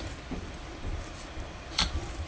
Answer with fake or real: fake